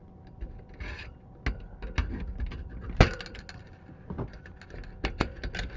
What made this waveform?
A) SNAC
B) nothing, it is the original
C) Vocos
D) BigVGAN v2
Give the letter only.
B